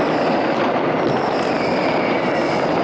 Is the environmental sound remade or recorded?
recorded